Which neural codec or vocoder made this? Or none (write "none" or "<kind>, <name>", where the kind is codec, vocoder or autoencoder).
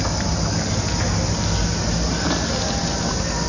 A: none